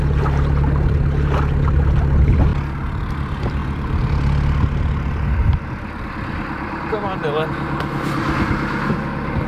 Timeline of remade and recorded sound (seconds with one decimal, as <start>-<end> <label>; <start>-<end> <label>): 0.0-3.6 recorded; 3.6-6.9 remade; 6.9-9.5 recorded